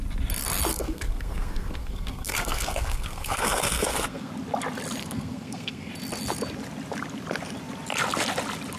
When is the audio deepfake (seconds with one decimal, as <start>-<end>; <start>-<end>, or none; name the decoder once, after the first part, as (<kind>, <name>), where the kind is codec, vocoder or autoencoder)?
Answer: 0.7-4.3 (codec, SNAC); 5.0-5.9